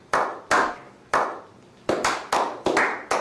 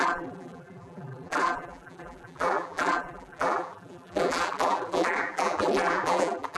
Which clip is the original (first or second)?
first